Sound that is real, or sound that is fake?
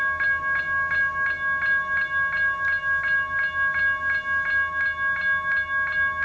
real